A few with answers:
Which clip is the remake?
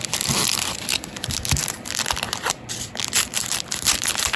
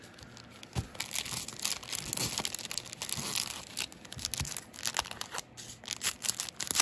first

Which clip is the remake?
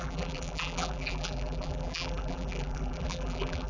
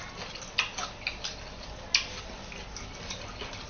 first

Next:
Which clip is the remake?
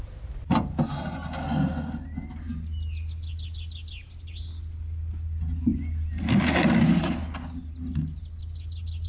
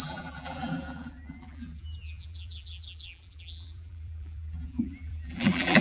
second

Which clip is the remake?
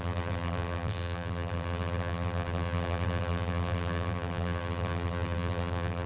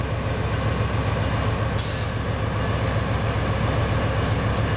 first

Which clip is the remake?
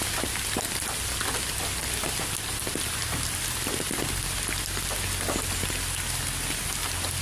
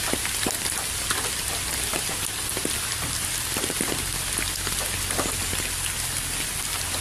second